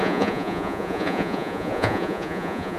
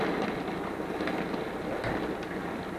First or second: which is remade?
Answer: first